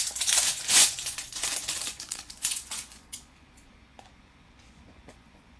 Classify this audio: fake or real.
fake